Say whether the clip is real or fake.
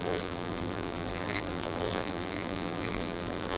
fake